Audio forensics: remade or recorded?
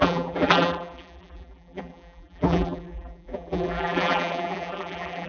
remade